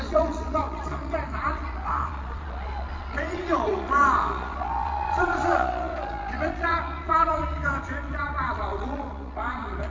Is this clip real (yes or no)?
no